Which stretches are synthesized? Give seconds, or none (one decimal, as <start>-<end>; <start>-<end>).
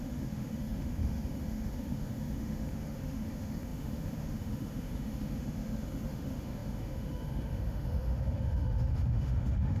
0.0-9.8